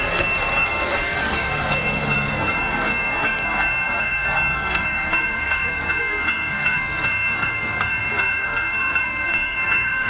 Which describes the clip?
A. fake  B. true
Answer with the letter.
A